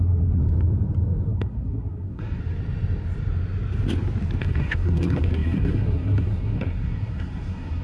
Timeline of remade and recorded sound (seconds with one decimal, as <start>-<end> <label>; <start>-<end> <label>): 0.0-0.4 remade; 0.4-1.3 recorded; 1.3-2.4 remade; 2.4-4.4 recorded; 4.4-7.8 remade